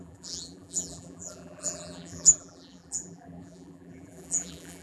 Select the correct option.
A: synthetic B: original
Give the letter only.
A